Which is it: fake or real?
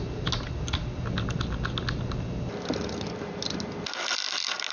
real